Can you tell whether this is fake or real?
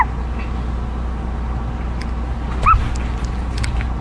real